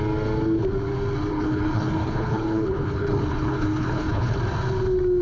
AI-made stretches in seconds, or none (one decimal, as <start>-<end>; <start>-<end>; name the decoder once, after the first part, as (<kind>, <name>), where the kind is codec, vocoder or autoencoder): 1.3-4.4 (codec, HILCodec)